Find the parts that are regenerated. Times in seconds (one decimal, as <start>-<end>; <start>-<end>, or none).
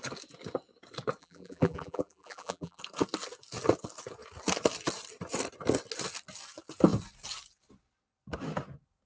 1.2-2.8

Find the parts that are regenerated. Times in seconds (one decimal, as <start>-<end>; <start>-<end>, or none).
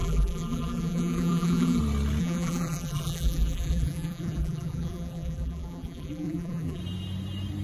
0.0-1.8; 2.2-6.8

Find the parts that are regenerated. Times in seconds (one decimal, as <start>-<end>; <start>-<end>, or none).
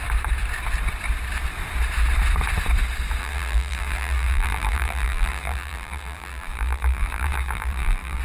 3.2-8.2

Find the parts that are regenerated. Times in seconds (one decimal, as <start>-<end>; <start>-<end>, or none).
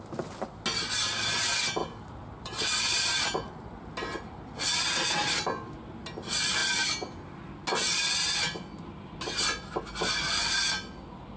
1.8-3.5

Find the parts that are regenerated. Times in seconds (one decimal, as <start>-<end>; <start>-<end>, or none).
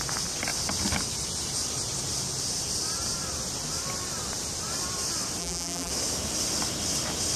5.4-5.9